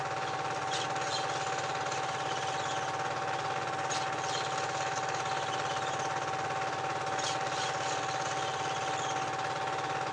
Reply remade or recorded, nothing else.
recorded